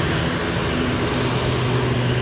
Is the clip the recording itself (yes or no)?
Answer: yes